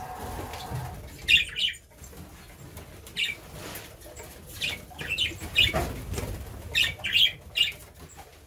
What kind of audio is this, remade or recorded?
recorded